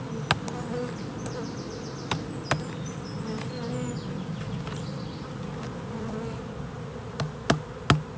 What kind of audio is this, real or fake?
real